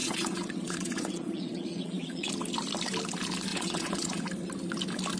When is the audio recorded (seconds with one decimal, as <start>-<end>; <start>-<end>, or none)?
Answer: 2.3-3.5; 4.2-5.2